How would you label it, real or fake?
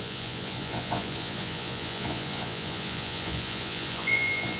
fake